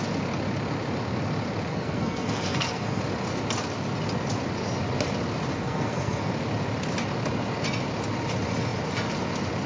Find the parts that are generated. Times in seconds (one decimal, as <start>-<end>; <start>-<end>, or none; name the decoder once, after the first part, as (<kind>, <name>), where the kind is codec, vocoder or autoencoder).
1.7-3.0 (codec, SNAC); 5.5-6.3

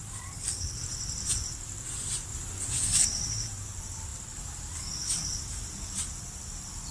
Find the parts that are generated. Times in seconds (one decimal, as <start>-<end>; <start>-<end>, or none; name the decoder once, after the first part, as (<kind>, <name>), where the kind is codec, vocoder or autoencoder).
0.0-0.7 (vocoder, BigVGAN v2)

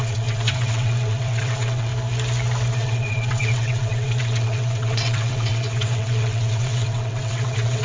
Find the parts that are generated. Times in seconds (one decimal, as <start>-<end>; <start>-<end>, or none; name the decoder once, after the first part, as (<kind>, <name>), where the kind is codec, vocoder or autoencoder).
0.0-1.9 (vocoder, WaveNeXt); 2.7-7.8

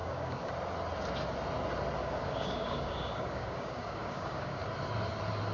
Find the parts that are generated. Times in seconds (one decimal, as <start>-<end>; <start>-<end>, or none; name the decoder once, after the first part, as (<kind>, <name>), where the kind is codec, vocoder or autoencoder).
0.0-0.5 (codec, DAC); 2.0-4.6

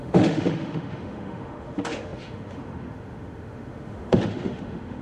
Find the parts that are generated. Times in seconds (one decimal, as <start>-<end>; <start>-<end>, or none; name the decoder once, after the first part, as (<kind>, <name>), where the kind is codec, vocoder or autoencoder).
0.0-5.0 (autoencoder, DAC-VAE)

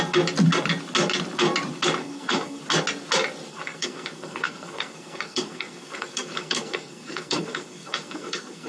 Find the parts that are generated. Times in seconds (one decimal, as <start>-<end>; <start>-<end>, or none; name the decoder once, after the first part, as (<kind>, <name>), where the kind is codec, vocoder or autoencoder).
2.0-2.6 (codec, SNAC); 3.5-8.7

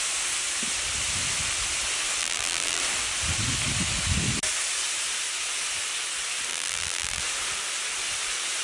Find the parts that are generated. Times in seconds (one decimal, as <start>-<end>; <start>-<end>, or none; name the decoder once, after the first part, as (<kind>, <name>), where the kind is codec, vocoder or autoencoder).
2.2-2.8 (vocoder, BigVGAN v2); 6.5-7.2